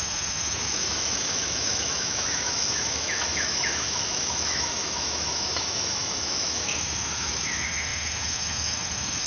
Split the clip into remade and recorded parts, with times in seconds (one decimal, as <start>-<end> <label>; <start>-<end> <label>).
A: 0.0-9.3 remade